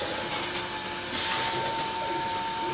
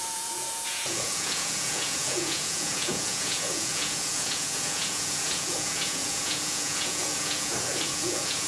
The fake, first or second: second